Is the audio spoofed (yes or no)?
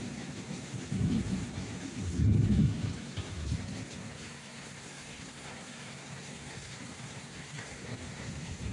yes